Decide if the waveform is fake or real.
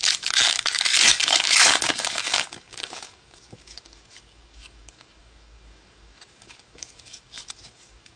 fake